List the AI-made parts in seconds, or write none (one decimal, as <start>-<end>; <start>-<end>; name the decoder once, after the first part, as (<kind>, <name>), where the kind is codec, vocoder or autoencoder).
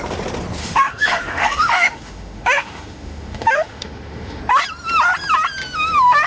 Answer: 0.6-4.4 (autoencoder, DAC-VAE)